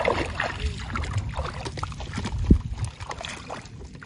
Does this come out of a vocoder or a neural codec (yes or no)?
no